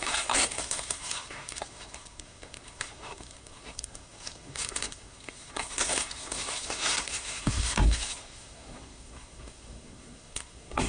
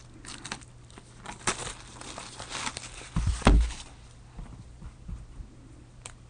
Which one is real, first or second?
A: second